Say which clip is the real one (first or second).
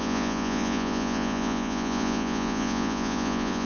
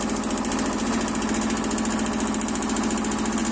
second